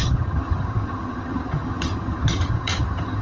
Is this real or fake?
fake